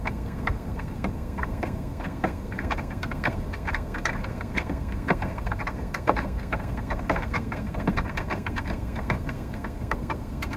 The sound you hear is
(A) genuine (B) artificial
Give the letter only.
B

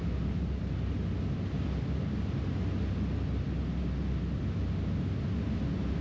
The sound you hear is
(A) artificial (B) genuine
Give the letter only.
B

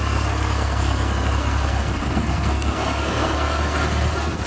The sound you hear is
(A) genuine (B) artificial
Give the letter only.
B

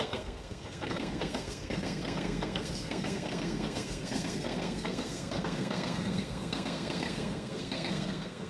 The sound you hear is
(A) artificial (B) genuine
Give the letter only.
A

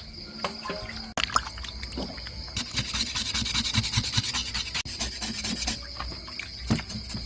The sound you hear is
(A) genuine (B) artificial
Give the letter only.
A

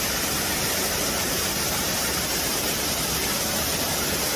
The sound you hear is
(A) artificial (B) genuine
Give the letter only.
B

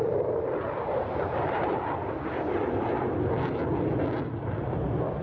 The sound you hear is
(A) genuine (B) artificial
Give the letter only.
A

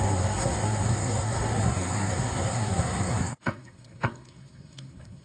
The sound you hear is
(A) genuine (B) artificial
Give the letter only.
B